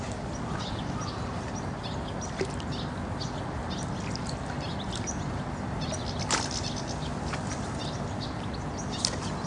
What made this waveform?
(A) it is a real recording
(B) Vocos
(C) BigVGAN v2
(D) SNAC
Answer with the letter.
A